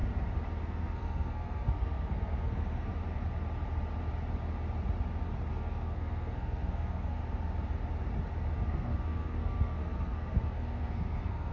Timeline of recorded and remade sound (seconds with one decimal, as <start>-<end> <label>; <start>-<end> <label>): 0.0-0.6 recorded; 0.6-2.9 remade; 2.9-5.5 recorded; 5.5-7.2 remade; 7.2-8.7 recorded; 8.7-11.5 remade